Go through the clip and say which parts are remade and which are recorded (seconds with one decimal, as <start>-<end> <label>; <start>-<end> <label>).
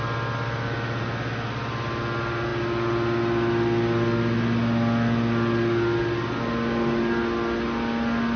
0.0-8.4 recorded